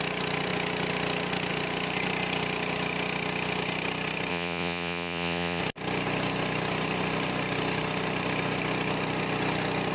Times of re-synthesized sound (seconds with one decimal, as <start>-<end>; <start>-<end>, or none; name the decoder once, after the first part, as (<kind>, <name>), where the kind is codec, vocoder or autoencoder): 4.3-5.6 (vocoder, Vocos)